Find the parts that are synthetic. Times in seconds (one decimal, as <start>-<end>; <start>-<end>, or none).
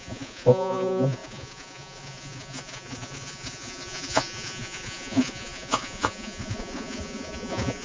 0.0-7.8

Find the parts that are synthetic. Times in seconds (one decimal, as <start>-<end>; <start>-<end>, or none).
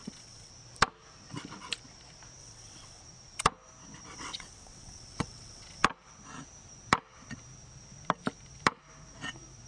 0.0-0.5; 2.4-3.0; 4.1-5.9